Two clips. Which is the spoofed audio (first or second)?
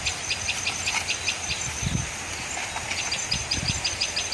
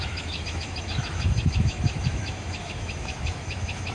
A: second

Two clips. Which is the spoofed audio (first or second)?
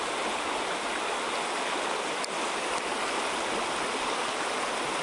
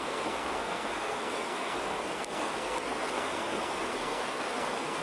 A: second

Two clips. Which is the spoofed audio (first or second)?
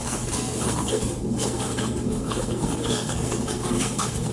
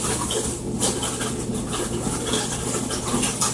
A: first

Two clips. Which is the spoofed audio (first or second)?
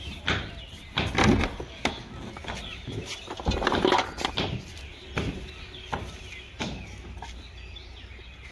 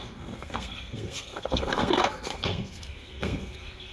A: second